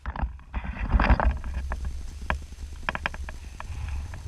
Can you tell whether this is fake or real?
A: real